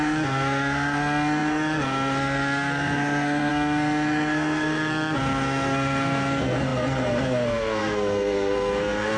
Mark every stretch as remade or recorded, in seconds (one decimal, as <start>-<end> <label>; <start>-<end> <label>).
0.0-9.2 remade